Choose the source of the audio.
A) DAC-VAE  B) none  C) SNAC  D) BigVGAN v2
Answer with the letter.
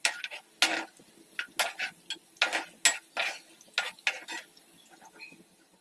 B